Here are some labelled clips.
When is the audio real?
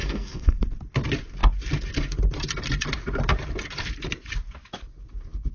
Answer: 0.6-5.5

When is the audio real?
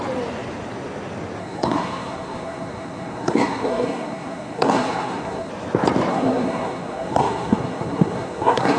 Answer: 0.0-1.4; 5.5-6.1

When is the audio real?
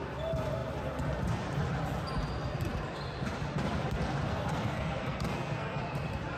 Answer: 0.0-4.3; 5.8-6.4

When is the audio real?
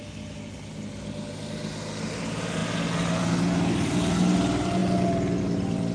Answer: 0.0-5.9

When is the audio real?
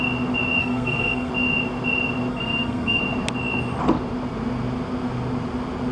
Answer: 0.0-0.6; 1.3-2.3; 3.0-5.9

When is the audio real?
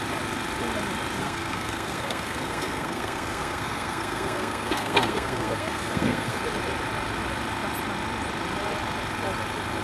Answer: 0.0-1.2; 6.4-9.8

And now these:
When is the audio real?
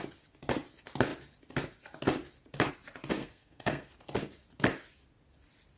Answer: 0.0-3.2; 3.9-5.8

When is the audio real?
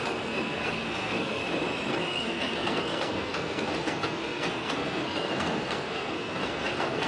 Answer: 1.4-1.9